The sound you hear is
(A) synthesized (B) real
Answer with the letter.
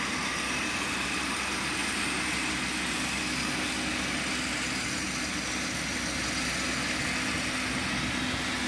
B